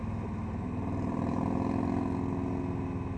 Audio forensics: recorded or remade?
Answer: recorded